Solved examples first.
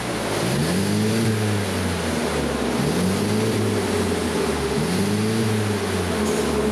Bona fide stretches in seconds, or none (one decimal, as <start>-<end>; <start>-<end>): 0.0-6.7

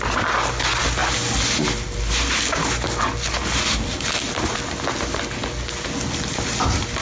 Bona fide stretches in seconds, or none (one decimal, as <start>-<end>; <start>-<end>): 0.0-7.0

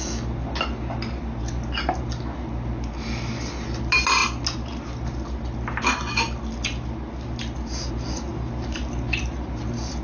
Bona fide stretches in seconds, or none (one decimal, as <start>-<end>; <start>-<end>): 0.0-8.3

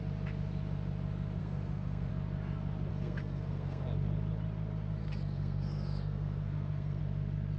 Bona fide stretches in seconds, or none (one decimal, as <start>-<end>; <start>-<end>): 0.0-1.4; 2.1-2.9; 3.8-5.0; 7.0-7.6